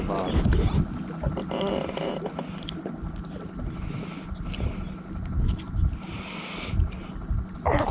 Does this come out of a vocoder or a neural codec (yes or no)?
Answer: no